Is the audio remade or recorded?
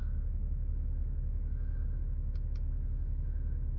remade